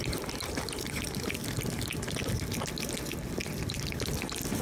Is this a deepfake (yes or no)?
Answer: no